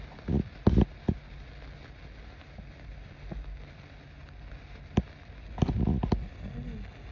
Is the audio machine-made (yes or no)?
no